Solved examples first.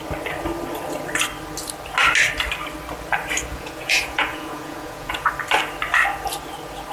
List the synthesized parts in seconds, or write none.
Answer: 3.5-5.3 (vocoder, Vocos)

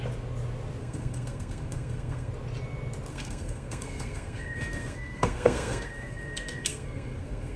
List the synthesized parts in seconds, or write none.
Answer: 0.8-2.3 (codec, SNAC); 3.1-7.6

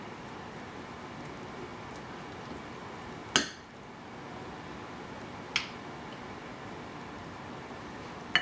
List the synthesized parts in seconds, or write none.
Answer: none

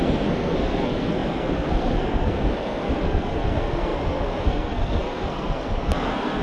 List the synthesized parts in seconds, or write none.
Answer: 0.0-6.4 (codec, SNAC)

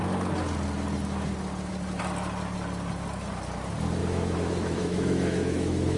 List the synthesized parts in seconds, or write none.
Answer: 4.0-6.0 (autoencoder, DAC-VAE)

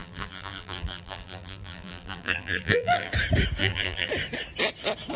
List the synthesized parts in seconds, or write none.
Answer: 0.0-3.1 (vocoder, BigVGAN v2); 3.6-4.1

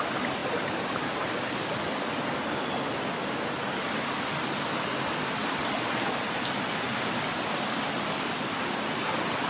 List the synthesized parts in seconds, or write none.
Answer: none

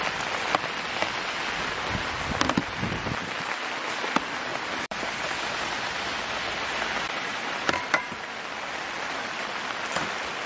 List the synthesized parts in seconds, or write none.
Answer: 4.5-8.4 (vocoder, BigVGAN v2)